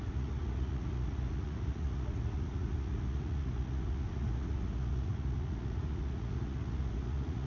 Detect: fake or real fake